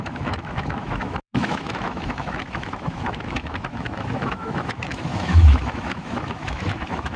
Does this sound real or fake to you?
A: fake